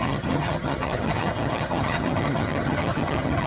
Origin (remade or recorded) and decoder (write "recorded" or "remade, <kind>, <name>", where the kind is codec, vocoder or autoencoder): remade, vocoder, HiFi-GAN